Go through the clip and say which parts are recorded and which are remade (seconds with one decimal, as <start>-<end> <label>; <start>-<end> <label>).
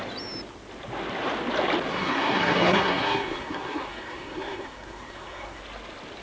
0.0-1.9 recorded; 1.9-5.6 remade; 5.6-6.2 recorded